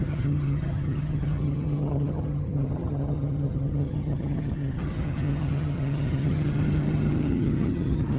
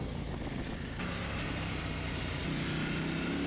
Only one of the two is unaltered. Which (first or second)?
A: second